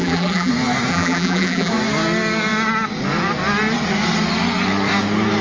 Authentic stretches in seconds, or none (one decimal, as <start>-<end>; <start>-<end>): 0.5-0.9; 1.7-5.4